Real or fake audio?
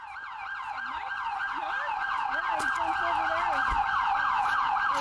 real